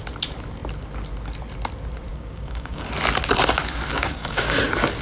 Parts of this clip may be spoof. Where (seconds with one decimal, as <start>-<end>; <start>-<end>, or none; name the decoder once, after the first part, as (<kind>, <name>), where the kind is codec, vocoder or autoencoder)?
2.1-2.9 (codec, DAC); 3.9-4.6